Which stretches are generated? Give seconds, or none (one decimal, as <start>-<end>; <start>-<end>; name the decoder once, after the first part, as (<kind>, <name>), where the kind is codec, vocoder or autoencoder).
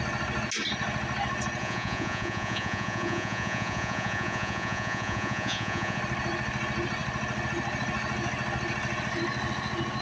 1.6-6.0 (vocoder, Vocos)